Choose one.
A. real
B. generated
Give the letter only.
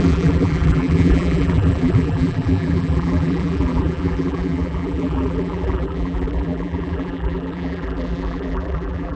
B